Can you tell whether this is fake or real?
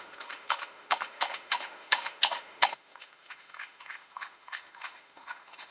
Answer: fake